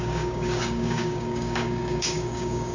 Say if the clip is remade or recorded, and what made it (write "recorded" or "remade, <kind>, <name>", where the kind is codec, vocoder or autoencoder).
remade, codec, DAC